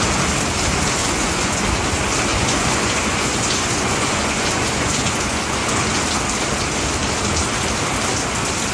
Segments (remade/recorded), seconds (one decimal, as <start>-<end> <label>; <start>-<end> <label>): 0.0-1.0 recorded; 1.0-1.6 remade; 1.6-2.3 recorded; 2.3-6.0 remade; 6.0-8.7 recorded